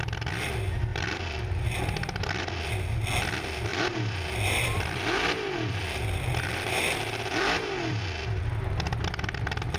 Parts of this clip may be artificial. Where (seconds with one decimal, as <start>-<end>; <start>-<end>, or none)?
0.9-2.7; 3.7-8.4